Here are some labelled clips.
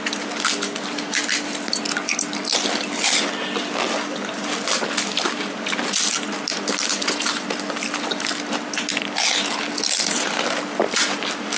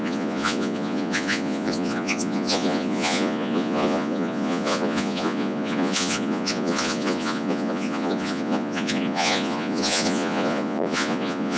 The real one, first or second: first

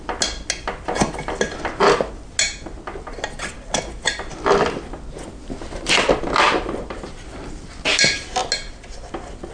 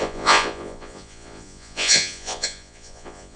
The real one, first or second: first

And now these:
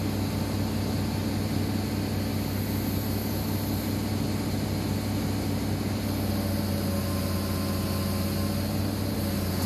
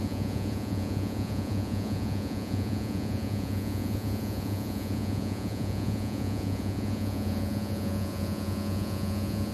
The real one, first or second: first